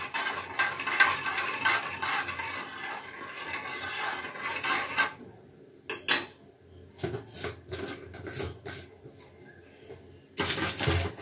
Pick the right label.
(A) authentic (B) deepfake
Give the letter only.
A